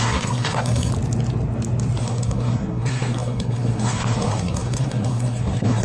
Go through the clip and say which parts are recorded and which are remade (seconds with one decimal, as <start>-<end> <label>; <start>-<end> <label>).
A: 0.0-0.9 remade; 0.9-2.0 recorded; 2.0-5.8 remade